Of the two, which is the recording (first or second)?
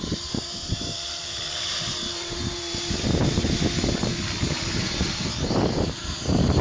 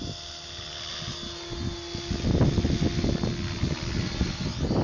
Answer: second